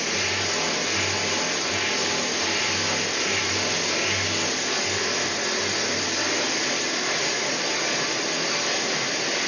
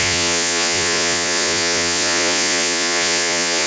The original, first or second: first